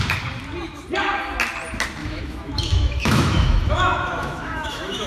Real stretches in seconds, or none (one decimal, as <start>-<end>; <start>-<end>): 0.0-2.0